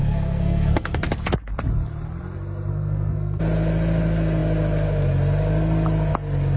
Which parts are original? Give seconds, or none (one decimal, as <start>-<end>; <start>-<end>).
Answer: 1.1-2.7; 3.4-6.6